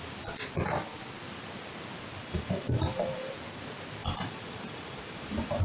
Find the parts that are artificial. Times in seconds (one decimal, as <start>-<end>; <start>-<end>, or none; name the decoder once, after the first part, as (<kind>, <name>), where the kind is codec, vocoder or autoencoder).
2.2-3.3 (vocoder, BigVGAN v2); 4.0-5.6

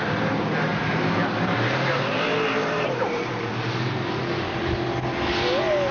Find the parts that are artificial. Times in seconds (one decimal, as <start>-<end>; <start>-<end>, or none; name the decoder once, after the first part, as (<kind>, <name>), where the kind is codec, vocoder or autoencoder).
0.7-4.2 (vocoder, BigVGAN v2)

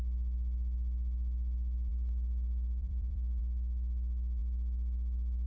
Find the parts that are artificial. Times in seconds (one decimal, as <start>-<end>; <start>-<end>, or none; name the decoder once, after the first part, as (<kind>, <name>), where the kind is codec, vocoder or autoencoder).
1.9-3.4 (vocoder, BigVGAN v2)

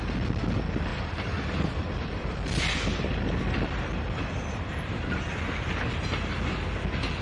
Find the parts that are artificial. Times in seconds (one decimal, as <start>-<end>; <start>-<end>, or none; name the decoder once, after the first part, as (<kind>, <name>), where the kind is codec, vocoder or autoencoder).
0.9-5.2 (vocoder, BigVGAN v2)